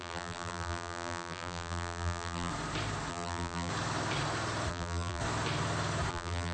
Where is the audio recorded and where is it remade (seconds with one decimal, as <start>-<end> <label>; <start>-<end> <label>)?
0.0-2.5 remade; 2.5-3.1 recorded; 3.1-3.7 remade; 3.7-4.7 recorded; 4.7-5.2 remade; 5.2-6.1 recorded; 6.1-6.5 remade